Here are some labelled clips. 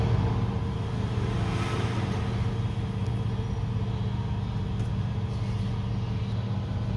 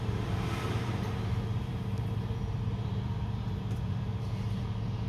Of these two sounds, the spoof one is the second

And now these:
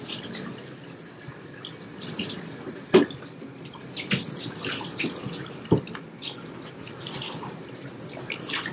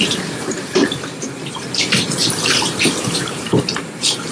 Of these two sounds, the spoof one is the second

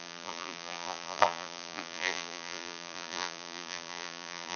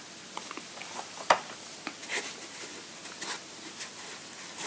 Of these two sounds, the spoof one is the first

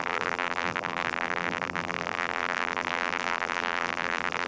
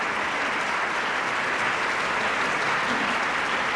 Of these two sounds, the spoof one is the first